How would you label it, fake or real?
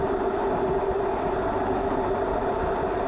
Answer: real